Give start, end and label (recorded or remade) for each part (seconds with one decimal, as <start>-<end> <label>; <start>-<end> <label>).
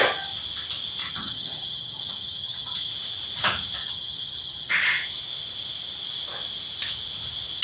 0.0-1.0 recorded; 1.0-2.9 remade; 2.9-3.8 recorded; 3.8-4.7 remade; 4.7-7.6 recorded